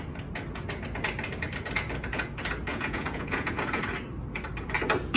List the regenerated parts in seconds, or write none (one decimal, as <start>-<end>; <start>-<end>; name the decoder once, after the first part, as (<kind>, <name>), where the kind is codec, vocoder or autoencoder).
2.7-3.8 (vocoder, Vocos)